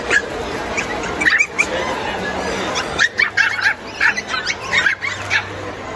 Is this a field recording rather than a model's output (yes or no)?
yes